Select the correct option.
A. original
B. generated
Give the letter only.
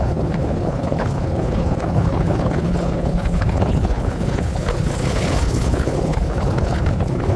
B